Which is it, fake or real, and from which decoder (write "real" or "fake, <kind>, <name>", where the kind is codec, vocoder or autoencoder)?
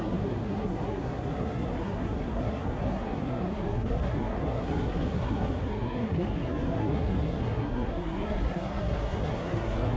fake, codec, SNAC